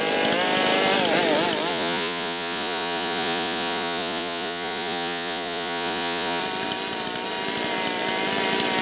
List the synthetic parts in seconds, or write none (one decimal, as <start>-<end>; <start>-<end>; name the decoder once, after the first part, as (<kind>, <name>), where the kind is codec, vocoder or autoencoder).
1.7-6.4 (vocoder, Vocos)